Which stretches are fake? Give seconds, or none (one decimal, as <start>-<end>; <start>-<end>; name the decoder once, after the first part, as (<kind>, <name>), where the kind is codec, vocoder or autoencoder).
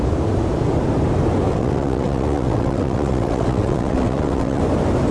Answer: 1.5-4.6 (vocoder, WaveNeXt)